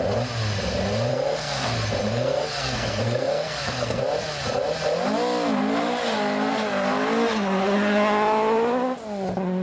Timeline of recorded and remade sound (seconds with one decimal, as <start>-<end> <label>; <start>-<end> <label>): 0.0-1.1 recorded; 1.1-1.7 remade; 1.7-2.1 recorded; 2.1-4.0 remade; 4.0-9.6 recorded